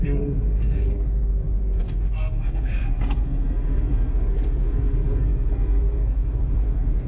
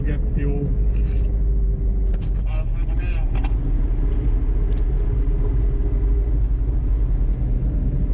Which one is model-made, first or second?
first